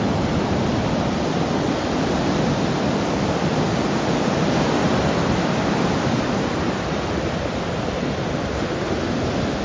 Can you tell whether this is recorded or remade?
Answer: recorded